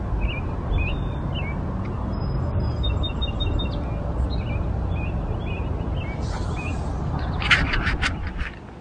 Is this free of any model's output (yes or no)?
yes